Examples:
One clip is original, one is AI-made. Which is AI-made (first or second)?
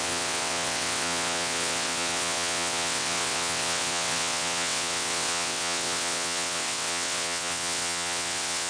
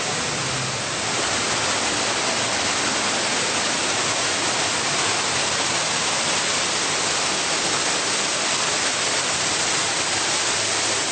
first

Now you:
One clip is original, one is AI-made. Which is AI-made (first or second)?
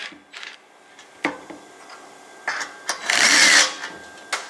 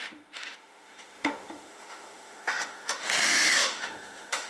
second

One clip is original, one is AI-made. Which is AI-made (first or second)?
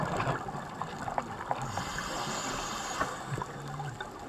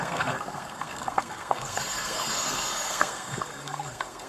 second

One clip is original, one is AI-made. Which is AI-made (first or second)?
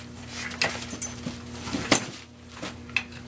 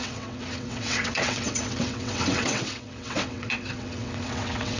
second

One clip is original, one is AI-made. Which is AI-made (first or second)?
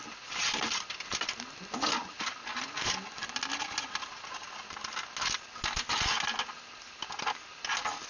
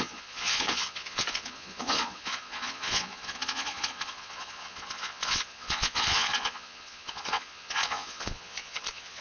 second